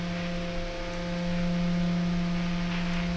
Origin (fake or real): real